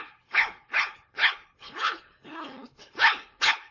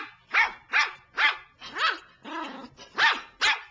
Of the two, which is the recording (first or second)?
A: second